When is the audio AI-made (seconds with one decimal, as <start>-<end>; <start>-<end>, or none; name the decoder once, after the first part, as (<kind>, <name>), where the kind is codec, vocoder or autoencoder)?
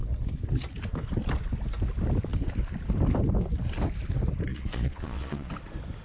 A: 4.5-5.5 (vocoder, Vocos)